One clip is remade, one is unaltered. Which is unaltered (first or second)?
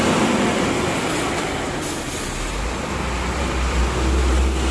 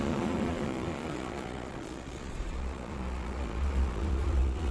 first